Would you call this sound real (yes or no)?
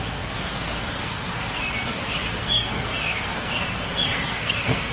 no